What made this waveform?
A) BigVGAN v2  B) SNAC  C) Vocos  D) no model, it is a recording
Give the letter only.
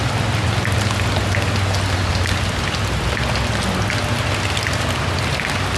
D